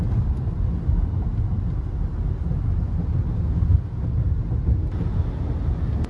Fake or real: real